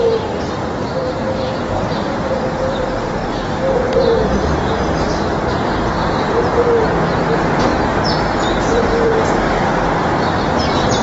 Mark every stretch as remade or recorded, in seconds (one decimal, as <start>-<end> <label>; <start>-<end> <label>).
0.0-7.7 remade; 7.7-8.6 recorded; 8.6-11.0 remade